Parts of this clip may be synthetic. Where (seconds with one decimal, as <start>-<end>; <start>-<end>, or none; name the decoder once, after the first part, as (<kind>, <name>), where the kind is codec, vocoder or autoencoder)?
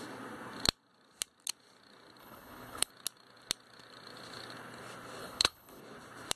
2.2-2.9 (codec, HILCodec); 5.2-5.8